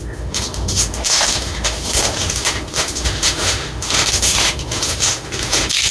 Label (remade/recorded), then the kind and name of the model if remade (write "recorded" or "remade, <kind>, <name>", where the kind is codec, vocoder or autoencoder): remade, autoencoder, DAC-VAE